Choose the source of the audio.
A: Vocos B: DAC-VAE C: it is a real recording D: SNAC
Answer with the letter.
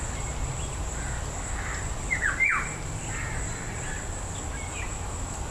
C